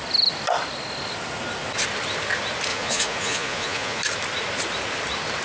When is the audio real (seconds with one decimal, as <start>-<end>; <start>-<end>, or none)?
0.0-2.7; 4.0-5.4